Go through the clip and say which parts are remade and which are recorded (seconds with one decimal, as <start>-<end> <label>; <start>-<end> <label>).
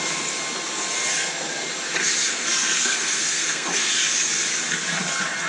0.0-2.3 recorded; 2.3-3.9 remade; 3.9-5.5 recorded